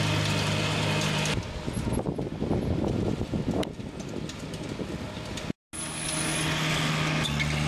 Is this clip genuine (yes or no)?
yes